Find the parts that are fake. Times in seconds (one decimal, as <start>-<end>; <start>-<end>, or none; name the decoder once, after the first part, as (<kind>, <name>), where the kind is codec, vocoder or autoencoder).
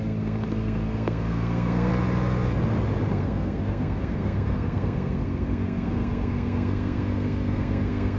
0.0-1.9 (codec, SNAC); 3.1-8.2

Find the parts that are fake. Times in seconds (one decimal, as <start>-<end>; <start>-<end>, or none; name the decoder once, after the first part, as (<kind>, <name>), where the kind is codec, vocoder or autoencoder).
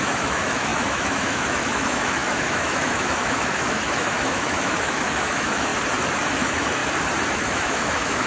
0.0-5.7 (autoencoder, DAC-VAE); 6.3-6.8; 7.3-8.3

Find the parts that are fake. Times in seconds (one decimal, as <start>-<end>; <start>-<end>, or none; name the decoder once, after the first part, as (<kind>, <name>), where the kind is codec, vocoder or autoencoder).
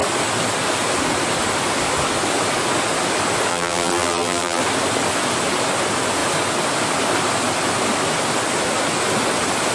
3.5-4.6 (vocoder, BigVGAN v2)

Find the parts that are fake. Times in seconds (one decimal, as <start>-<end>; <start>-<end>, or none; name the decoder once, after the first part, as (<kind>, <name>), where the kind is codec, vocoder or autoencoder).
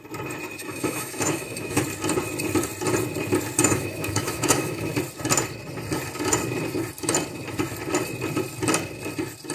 0.6-1.8 (autoencoder, DAC-VAE); 3.6-4.9